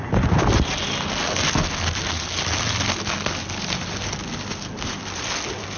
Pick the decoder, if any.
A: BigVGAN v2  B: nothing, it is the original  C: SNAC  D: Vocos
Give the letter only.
B